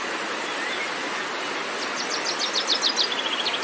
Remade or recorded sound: recorded